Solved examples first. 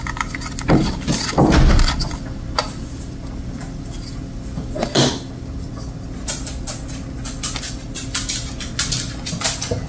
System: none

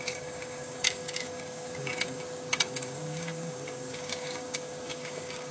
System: codec, DAC